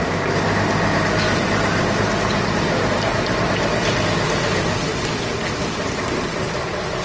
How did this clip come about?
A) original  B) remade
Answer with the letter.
A